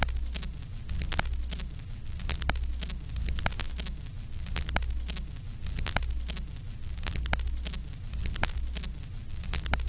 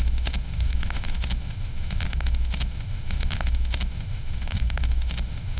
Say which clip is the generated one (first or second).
second